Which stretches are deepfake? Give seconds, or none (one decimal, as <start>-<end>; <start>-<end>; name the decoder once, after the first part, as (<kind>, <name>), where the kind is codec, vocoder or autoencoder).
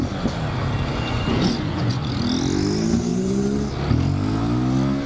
0.9-2.1 (vocoder, Vocos)